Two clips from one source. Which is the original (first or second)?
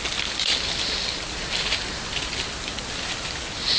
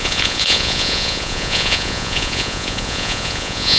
first